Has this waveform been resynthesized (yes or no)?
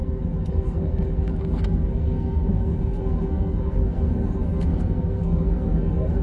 yes